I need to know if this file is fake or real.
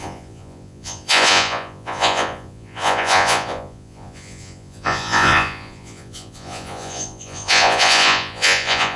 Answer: fake